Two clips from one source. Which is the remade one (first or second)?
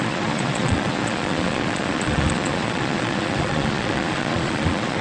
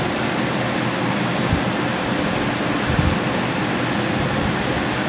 first